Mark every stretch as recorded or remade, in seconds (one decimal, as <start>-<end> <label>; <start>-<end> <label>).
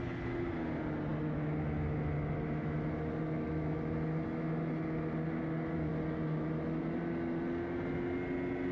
0.0-8.7 recorded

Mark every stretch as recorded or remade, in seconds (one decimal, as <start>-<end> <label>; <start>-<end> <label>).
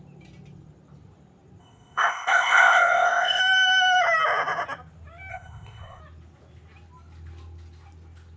0.0-1.6 recorded; 1.6-3.4 remade; 3.4-5.3 recorded; 5.3-6.0 remade; 6.0-8.4 recorded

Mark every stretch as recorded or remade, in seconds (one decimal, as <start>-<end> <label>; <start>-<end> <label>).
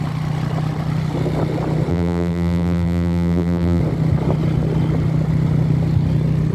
0.0-1.9 recorded; 1.9-3.8 remade; 3.8-6.5 recorded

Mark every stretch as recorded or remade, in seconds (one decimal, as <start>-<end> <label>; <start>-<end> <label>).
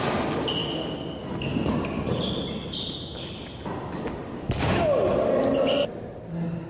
0.0-6.7 recorded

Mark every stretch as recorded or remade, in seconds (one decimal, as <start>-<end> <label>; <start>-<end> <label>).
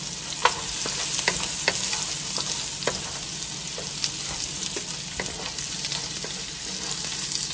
0.0-7.5 recorded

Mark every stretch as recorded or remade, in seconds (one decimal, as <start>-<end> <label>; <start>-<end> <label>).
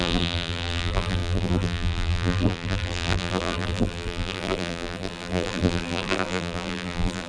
0.0-7.3 remade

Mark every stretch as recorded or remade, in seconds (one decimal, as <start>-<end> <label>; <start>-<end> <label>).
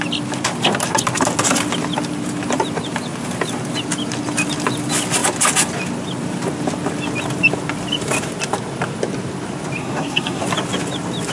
0.0-9.8 recorded; 9.8-10.4 remade; 10.4-11.3 recorded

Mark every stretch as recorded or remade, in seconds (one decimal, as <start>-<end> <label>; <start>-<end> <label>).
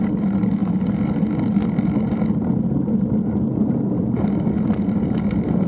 0.0-5.7 recorded